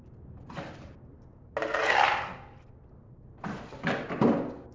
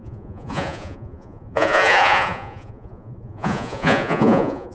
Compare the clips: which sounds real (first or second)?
first